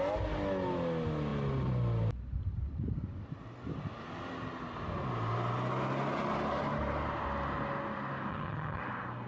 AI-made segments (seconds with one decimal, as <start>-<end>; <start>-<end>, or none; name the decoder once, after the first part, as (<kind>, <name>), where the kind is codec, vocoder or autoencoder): 8.3-8.8 (vocoder, HiFi-GAN)